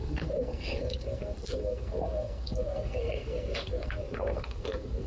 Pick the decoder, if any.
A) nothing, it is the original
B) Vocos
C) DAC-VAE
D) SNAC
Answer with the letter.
D